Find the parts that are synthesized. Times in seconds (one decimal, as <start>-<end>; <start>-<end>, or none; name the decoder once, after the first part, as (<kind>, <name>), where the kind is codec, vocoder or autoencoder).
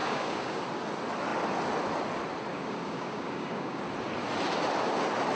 0.0-0.6 (codec, DAC); 2.5-3.8